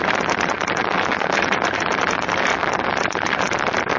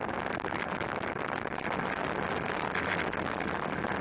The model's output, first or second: first